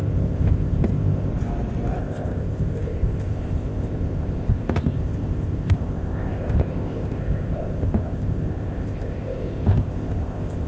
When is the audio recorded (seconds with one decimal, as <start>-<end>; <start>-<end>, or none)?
1.3-2.0